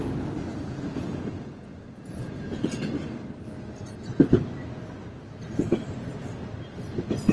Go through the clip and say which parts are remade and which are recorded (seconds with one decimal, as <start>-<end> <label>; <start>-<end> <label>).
0.0-0.5 recorded; 0.5-2.9 remade; 2.9-7.3 recorded